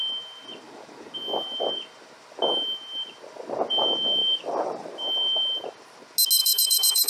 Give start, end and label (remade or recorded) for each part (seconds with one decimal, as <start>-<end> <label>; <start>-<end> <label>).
0.0-4.2 recorded; 4.2-4.9 remade; 4.9-6.4 recorded; 6.4-7.1 remade

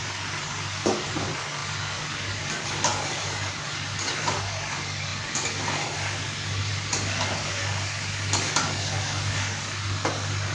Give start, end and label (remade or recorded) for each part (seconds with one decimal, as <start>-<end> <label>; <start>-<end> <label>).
0.0-10.5 remade

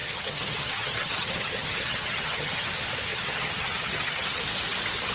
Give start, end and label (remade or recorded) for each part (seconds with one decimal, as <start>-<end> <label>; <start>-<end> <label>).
0.0-2.7 remade; 2.7-3.1 recorded; 3.1-4.4 remade; 4.4-5.1 recorded

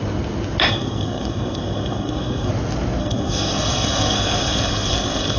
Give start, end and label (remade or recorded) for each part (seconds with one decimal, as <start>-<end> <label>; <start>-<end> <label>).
0.0-0.7 recorded; 0.7-2.5 remade; 2.5-3.0 recorded; 3.0-5.4 remade

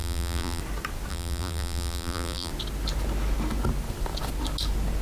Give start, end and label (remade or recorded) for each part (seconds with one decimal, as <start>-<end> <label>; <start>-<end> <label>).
0.0-0.6 remade; 0.6-1.1 recorded; 1.1-2.5 remade; 2.5-5.0 recorded

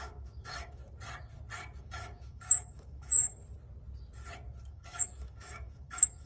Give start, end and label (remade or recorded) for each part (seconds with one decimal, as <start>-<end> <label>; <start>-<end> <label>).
0.0-0.8 remade; 0.8-1.8 recorded; 1.8-3.3 remade; 3.3-4.7 recorded; 4.7-6.3 remade

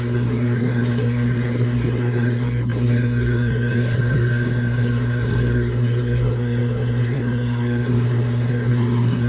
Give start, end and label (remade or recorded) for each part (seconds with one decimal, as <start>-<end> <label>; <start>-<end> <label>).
0.0-9.3 remade